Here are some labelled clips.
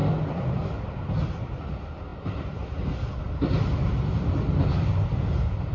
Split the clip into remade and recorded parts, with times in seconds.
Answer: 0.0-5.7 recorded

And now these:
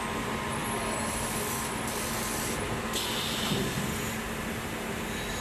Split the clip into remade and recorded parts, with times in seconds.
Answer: 0.0-5.4 recorded

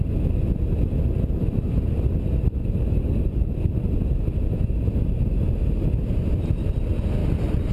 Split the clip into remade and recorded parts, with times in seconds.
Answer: 0.0-7.2 recorded; 7.2-7.7 remade

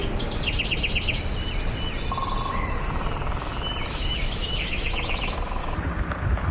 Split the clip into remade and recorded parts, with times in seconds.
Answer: 0.0-3.9 recorded; 3.9-5.6 remade; 5.6-6.5 recorded

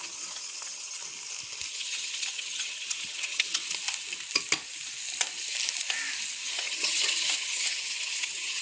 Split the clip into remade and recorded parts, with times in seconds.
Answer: 0.0-1.0 remade; 1.0-1.7 recorded; 1.7-3.6 remade; 3.6-6.3 recorded; 6.3-8.6 remade